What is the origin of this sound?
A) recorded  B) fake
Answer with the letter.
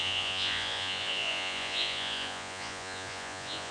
B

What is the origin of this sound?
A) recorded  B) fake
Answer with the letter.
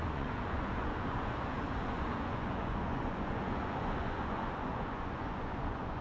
B